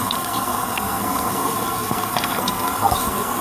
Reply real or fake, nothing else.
fake